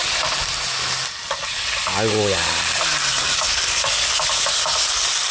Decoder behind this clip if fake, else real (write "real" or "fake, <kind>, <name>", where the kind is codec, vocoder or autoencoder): real